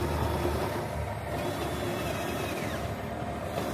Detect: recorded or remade recorded